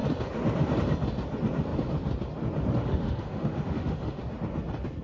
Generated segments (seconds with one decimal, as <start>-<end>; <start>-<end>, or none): 2.8-4.2